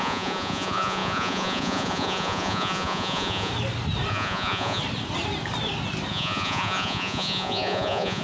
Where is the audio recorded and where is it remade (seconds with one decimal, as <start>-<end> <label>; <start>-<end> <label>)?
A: 0.0-3.5 remade; 3.5-4.1 recorded; 4.1-4.8 remade; 4.8-6.1 recorded; 6.1-8.2 remade